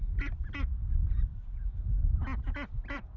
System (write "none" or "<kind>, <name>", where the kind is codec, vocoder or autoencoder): none